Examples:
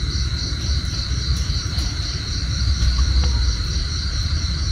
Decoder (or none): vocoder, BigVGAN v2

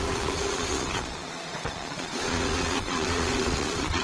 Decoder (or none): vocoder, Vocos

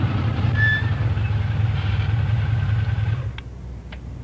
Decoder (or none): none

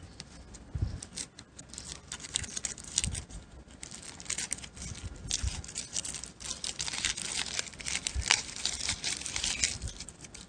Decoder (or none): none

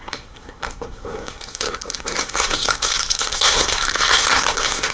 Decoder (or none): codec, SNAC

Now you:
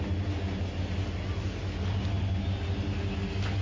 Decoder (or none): none